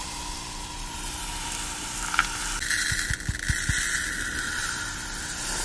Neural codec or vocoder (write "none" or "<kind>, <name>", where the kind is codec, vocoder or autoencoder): none